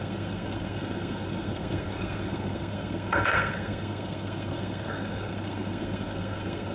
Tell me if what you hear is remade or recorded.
remade